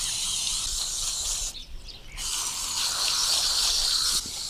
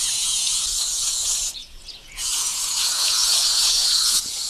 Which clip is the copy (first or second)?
second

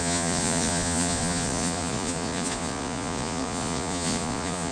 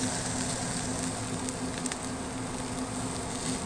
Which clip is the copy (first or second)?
first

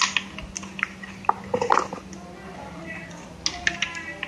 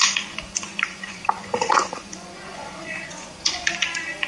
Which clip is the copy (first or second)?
second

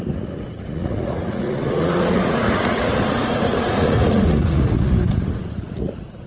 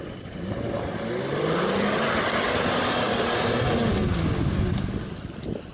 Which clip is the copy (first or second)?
first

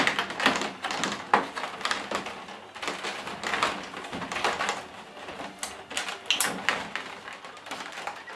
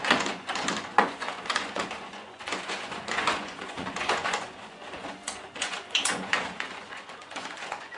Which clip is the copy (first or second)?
second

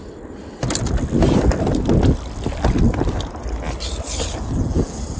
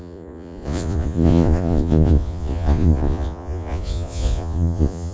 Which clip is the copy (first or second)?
second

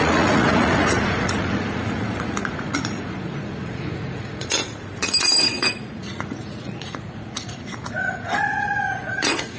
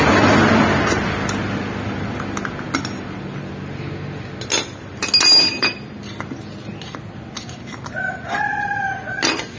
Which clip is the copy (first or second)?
first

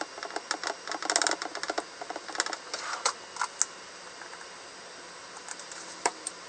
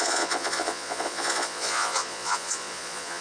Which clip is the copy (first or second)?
second